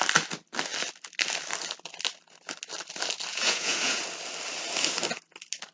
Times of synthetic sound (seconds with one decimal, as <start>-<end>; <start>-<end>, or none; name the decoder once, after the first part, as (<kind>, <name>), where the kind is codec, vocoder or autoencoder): 3.3-4.0 (vocoder, Vocos)